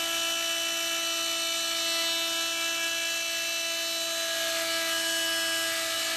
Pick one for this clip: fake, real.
real